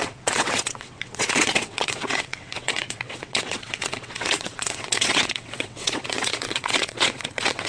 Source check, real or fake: fake